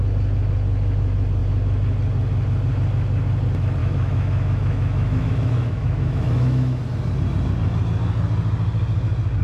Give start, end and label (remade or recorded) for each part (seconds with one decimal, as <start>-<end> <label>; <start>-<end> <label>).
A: 0.0-3.8 recorded; 3.8-6.8 remade; 6.8-9.4 recorded